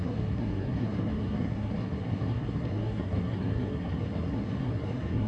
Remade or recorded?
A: remade